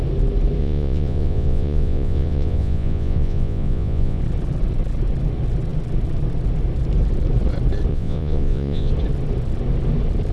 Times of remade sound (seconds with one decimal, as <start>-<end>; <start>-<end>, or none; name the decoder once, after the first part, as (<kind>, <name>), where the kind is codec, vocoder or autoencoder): 0.6-4.2 (vocoder, Vocos); 7.9-8.9